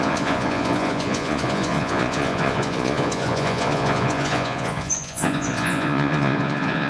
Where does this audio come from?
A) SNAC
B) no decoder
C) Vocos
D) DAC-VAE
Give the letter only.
C